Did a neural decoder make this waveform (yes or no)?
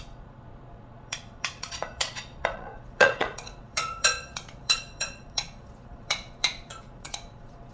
yes